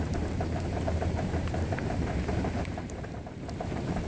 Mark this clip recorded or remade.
remade